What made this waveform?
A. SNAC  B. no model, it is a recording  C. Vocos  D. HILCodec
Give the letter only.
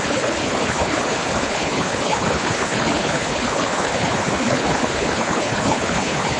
D